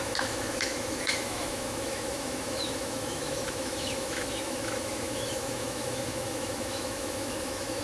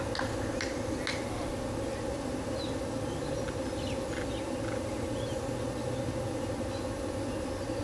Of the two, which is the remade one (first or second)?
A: first